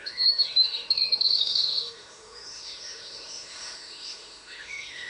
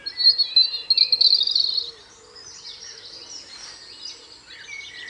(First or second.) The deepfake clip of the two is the first